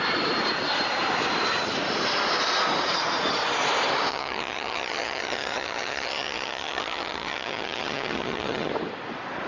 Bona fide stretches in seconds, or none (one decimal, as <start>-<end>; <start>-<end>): 0.0-4.1; 8.7-9.5